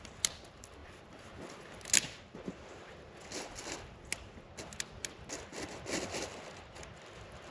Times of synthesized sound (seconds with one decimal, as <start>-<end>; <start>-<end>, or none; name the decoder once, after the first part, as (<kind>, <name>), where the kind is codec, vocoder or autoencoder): none